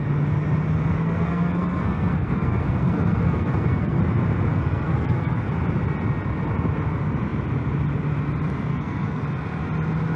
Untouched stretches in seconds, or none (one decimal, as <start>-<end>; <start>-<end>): 0.0-0.9; 4.0-4.5; 5.5-8.7; 9.2-10.2